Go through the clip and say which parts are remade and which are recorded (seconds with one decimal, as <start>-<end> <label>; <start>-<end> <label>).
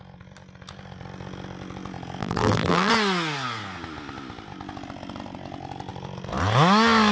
0.0-2.2 recorded; 2.2-2.9 remade; 2.9-7.1 recorded